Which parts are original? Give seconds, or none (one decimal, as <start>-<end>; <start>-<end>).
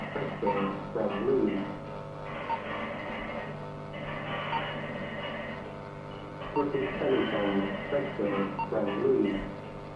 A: 0.0-10.0